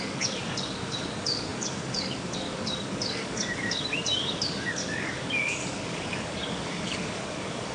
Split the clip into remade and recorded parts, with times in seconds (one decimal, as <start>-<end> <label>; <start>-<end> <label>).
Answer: 0.0-7.7 remade